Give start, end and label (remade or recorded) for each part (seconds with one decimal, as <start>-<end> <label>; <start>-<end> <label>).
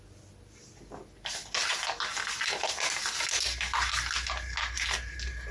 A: 0.0-5.5 recorded